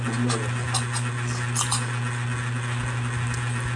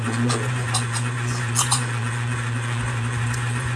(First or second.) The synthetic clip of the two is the second